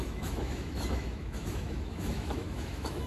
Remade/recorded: remade